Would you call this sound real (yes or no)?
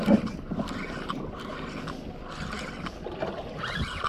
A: yes